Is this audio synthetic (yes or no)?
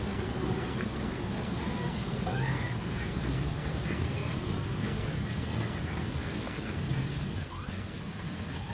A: yes